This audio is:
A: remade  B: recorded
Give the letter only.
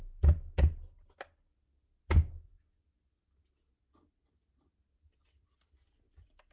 B